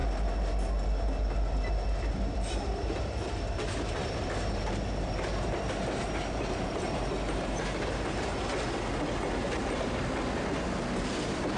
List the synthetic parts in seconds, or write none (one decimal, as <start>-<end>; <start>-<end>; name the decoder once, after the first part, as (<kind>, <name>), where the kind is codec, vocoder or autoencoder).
2.6-8.3 (vocoder, BigVGAN v2); 10.7-11.6